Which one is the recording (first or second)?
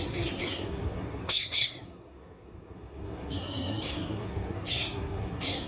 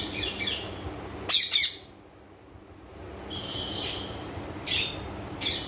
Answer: second